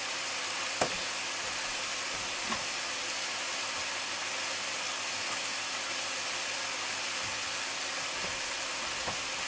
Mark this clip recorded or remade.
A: recorded